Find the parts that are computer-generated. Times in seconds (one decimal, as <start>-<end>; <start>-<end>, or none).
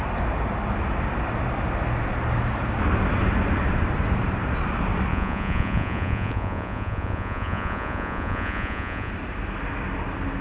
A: 5.1-9.1